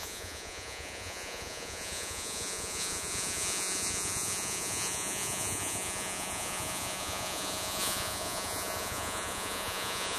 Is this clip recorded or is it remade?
remade